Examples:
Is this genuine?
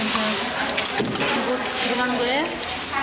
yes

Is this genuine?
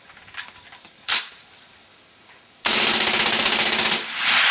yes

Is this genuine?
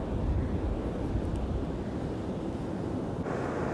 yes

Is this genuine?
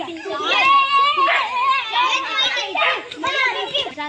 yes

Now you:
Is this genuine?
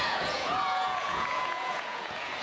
no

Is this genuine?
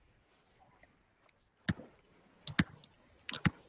yes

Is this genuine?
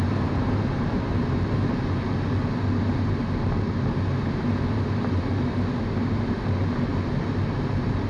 yes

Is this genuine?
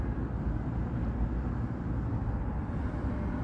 yes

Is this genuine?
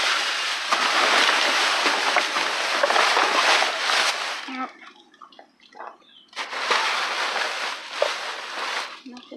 yes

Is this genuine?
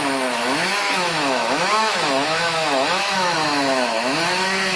no